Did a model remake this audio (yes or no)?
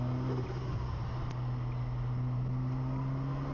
no